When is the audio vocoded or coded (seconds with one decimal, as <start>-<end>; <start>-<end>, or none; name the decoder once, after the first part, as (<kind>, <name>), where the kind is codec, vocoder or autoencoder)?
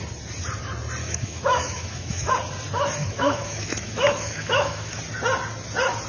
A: 1.0-2.3 (autoencoder, DAC-VAE); 3.0-5.0